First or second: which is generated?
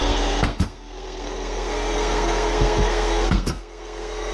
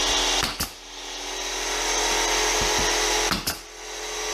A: first